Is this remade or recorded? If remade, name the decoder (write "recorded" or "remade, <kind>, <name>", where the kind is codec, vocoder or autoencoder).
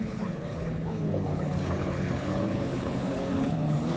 remade, codec, HILCodec